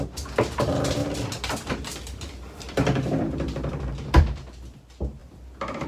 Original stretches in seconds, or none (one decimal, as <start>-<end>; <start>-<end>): 0.0-1.0; 4.2-5.2